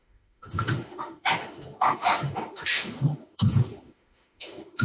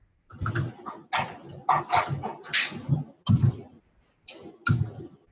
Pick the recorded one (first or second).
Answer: second